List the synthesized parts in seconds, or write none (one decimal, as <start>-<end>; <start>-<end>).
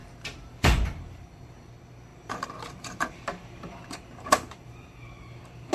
0.0-1.7; 2.1-5.7